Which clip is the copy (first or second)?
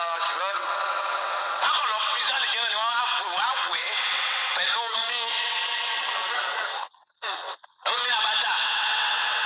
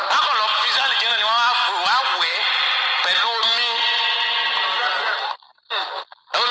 first